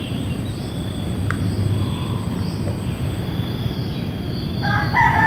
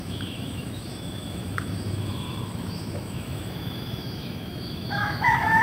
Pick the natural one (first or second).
first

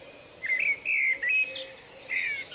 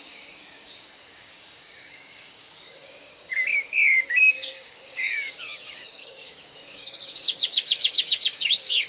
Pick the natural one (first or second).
first